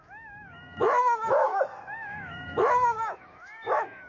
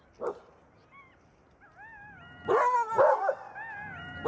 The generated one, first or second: first